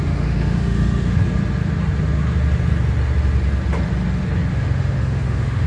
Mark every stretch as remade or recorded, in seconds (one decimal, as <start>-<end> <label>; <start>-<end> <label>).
0.0-1.2 remade; 1.2-4.5 recorded; 4.5-5.7 remade